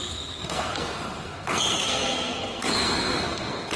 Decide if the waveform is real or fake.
fake